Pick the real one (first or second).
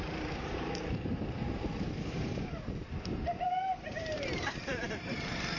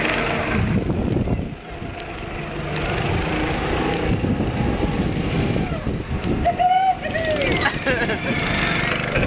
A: second